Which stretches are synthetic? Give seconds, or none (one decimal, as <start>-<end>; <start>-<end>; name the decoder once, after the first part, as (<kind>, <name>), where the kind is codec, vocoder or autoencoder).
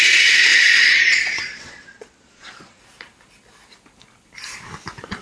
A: 0.5-2.8 (vocoder, Vocos)